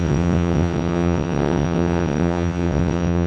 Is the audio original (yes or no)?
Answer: no